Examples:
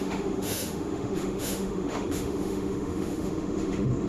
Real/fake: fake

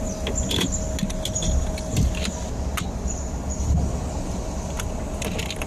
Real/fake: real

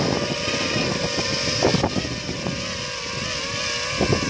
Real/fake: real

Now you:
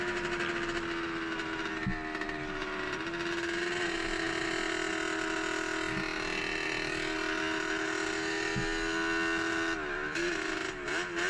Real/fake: real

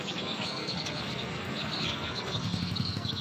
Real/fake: fake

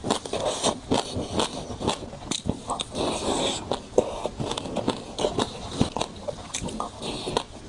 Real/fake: real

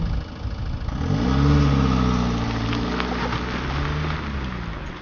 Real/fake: real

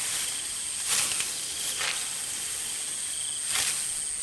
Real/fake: real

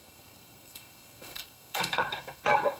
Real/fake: fake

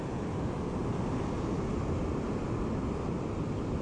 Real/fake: real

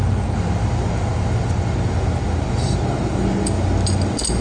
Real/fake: real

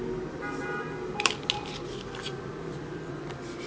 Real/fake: real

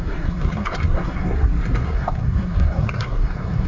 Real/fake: fake